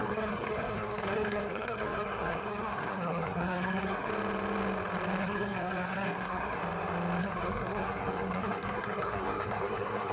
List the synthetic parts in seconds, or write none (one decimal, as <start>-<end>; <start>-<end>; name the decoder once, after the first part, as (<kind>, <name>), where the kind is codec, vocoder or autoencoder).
0.0-4.1 (codec, SNAC); 5.2-6.6; 7.2-10.1